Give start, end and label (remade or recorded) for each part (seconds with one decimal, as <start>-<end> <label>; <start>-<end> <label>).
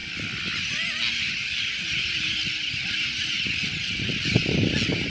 0.0-5.1 recorded